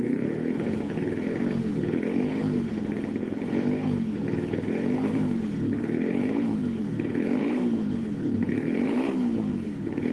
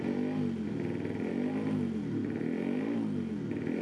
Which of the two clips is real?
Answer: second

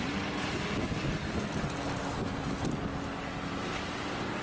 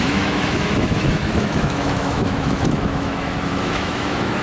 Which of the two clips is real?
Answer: first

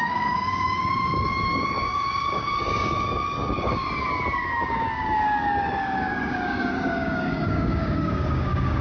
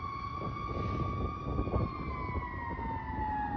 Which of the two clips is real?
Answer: second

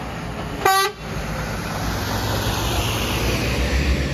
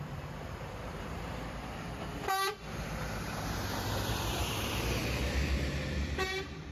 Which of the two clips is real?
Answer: first